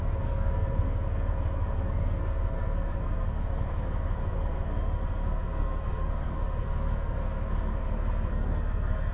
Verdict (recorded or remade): remade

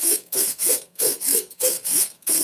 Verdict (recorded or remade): remade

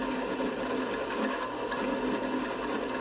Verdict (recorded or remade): recorded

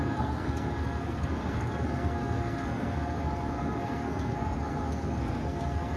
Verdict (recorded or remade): remade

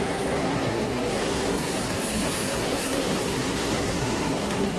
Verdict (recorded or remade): remade